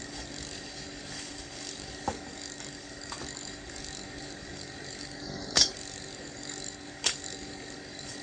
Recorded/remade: remade